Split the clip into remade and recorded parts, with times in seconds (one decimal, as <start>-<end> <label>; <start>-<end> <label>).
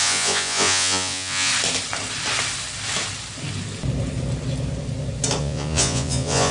0.0-1.5 remade; 1.5-5.4 recorded; 5.4-6.5 remade